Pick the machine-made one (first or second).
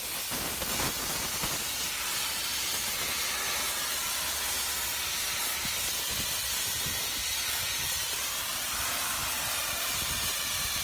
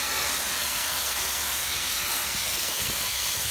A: second